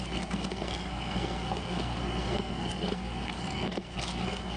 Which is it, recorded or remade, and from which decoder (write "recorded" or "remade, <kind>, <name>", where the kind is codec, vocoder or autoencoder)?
remade, codec, SNAC